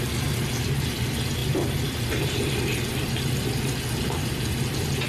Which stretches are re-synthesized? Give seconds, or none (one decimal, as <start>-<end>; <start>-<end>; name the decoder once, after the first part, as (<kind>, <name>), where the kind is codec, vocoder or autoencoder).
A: none